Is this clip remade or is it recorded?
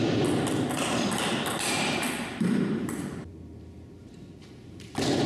remade